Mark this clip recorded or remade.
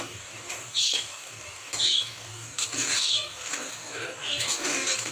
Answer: remade